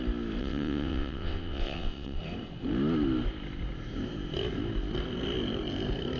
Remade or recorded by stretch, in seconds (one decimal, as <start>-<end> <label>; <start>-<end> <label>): 0.0-0.4 recorded; 0.4-2.2 remade; 2.2-6.2 recorded